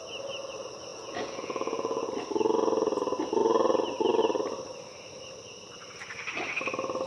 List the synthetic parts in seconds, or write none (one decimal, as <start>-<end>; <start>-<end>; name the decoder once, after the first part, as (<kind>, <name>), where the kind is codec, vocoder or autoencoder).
0.9-2.1 (vocoder, Vocos)